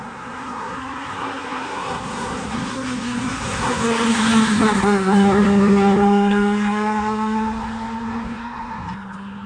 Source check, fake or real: fake